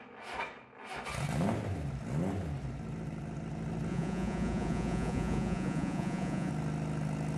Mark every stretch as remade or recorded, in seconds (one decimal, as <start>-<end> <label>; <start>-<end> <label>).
0.0-3.9 recorded; 3.9-6.5 remade; 6.5-7.4 recorded